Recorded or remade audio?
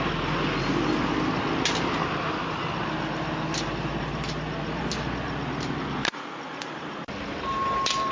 recorded